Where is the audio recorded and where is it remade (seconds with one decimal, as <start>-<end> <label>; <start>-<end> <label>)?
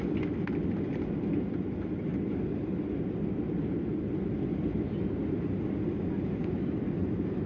0.0-7.5 recorded